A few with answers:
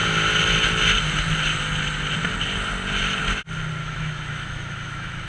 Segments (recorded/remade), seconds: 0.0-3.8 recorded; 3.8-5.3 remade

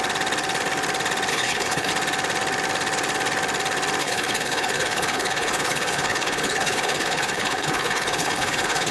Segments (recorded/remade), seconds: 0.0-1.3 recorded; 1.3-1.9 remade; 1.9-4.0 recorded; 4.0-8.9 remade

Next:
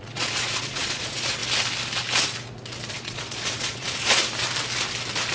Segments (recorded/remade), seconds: 0.0-1.4 remade; 1.4-2.9 recorded; 2.9-4.2 remade; 4.2-5.3 recorded

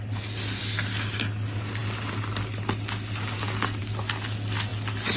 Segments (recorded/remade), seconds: 0.0-5.2 recorded